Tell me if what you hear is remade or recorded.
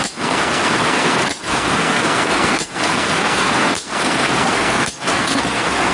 remade